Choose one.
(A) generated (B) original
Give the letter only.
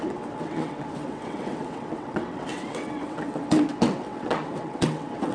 A